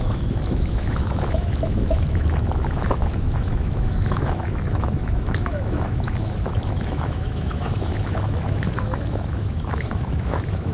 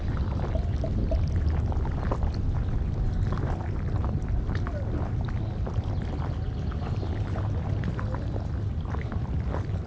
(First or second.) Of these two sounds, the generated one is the first